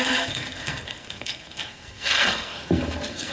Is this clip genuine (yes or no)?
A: no